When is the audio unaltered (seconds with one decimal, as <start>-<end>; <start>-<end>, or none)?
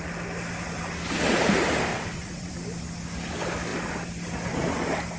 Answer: 0.0-1.9; 2.5-5.2